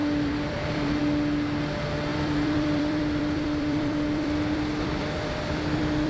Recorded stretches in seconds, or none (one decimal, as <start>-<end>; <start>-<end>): 1.0-2.1